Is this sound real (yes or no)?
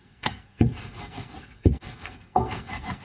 no